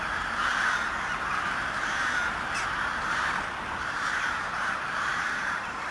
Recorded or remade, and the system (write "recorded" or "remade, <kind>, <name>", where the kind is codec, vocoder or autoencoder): remade, vocoder, BigVGAN v2